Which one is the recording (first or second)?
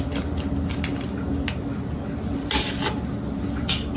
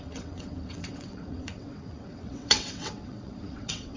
first